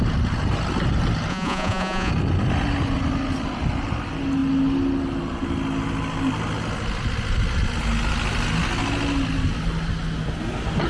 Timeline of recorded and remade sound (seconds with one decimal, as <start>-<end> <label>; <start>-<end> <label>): 0.0-1.3 recorded; 1.3-2.1 remade; 2.1-10.9 recorded